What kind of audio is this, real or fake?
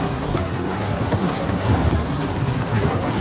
fake